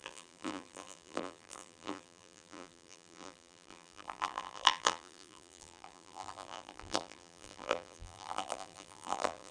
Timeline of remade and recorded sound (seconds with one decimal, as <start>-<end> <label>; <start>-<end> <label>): 0.0-9.5 remade